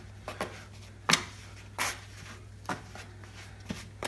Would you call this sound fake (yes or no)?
no